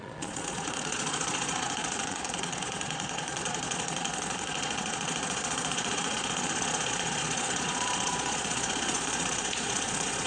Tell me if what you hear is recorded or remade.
remade